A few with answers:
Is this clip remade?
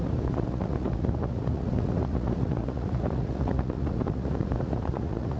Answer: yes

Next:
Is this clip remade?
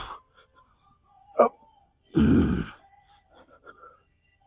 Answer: no